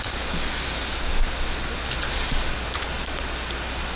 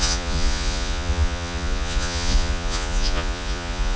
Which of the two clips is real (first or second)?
first